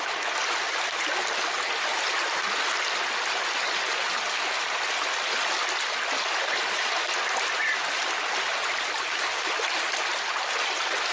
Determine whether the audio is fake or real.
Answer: real